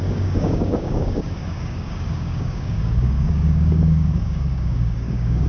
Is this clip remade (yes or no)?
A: yes